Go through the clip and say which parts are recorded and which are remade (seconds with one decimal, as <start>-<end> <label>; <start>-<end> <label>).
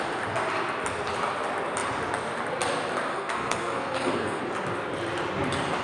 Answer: 0.0-3.1 recorded; 3.1-4.4 remade; 4.4-5.8 recorded